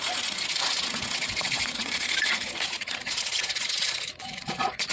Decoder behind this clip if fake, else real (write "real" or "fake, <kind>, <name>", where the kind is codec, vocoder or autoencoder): fake, vocoder, Vocos